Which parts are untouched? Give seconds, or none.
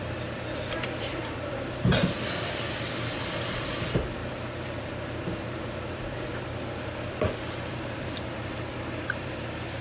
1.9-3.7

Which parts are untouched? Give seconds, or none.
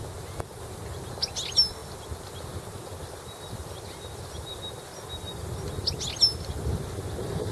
0.0-7.5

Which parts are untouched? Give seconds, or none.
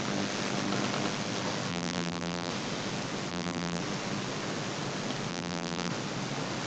0.0-1.7; 2.5-3.3; 3.8-5.3; 5.9-6.7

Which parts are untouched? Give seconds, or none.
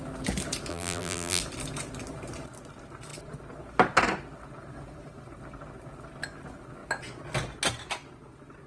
0.0-0.7; 1.4-8.7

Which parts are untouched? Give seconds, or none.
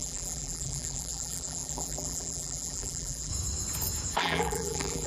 3.3-4.2